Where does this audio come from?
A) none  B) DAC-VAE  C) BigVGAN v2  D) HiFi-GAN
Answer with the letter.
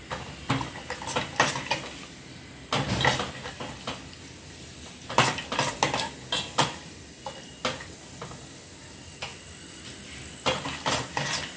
A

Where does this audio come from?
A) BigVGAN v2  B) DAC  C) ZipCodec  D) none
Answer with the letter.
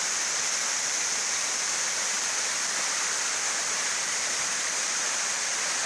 A